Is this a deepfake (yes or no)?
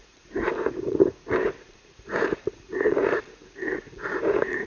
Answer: yes